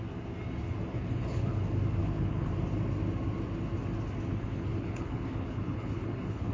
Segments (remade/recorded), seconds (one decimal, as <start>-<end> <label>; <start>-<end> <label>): 0.0-0.9 recorded; 0.9-1.5 remade; 1.5-2.0 recorded; 2.0-2.5 remade; 2.5-4.3 recorded; 4.3-6.5 remade